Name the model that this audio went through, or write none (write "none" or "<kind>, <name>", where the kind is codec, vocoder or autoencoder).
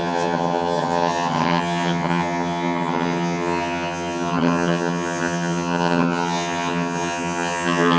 vocoder, HiFi-GAN